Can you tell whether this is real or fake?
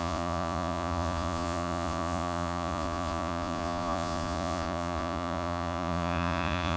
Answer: fake